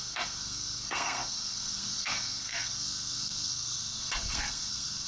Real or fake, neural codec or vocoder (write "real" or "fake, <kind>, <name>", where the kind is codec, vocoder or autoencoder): fake, codec, SNAC